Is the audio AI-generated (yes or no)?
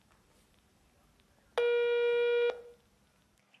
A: no